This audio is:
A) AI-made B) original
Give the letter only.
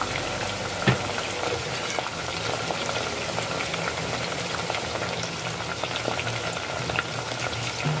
B